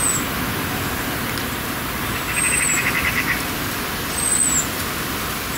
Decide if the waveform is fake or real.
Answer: real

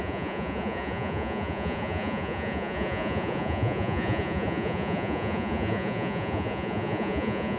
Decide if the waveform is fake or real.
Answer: fake